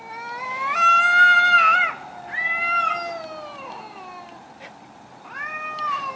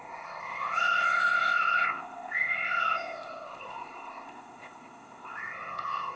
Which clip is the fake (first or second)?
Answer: second